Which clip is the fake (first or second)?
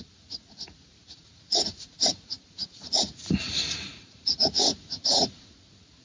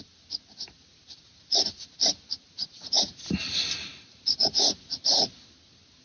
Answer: first